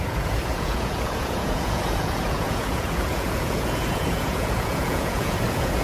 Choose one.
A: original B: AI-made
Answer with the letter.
B